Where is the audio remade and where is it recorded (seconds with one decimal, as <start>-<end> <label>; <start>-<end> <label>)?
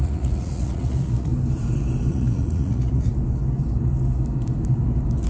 0.0-1.3 remade; 1.3-2.1 recorded; 2.1-3.1 remade; 3.1-5.3 recorded